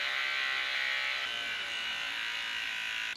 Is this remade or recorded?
recorded